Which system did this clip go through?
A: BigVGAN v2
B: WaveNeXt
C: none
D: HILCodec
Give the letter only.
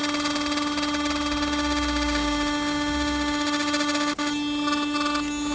C